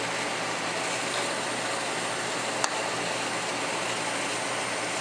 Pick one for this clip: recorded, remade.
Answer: recorded